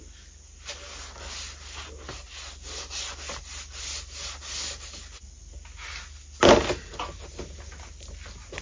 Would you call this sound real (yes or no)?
yes